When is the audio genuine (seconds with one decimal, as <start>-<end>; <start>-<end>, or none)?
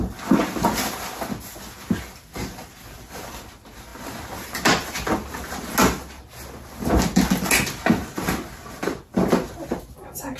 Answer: 0.0-10.4